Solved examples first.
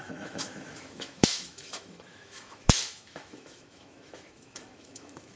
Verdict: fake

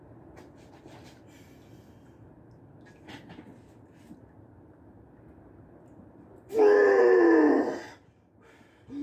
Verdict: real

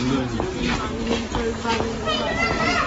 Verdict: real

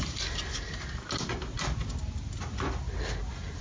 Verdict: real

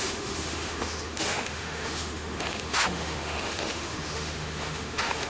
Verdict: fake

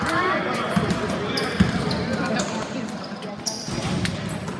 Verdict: real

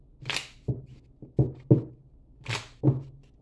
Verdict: real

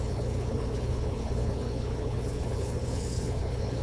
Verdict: fake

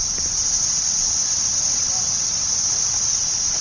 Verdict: real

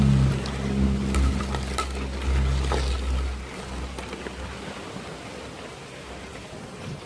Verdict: real